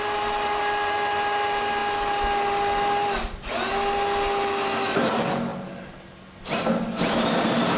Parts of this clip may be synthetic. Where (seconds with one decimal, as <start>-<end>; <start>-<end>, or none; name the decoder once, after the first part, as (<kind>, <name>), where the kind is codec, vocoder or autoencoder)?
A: none